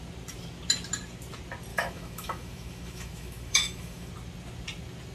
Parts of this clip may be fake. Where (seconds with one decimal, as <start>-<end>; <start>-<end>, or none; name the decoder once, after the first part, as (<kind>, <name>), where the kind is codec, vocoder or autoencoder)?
1.7-4.1 (autoencoder, DAC-VAE)